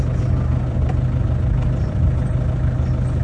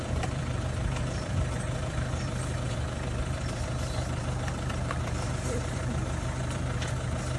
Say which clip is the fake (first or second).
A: second